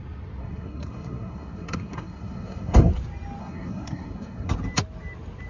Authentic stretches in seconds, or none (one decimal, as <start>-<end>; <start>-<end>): 0.0-0.4; 2.9-3.4; 4.5-5.5